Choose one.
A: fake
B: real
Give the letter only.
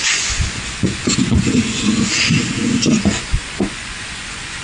A